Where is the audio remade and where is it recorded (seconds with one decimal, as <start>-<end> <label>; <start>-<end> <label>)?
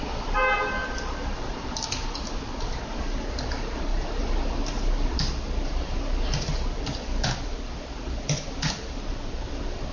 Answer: 0.0-9.9 recorded